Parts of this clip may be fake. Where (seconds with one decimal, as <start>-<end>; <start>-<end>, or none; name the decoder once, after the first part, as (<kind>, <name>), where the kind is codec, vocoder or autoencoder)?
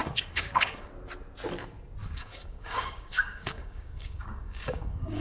0.0-0.9 (codec, DAC); 2.0-5.2